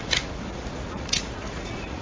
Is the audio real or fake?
fake